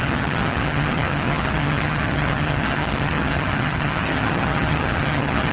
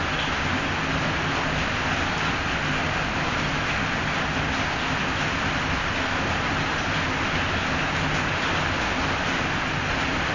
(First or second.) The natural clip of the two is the second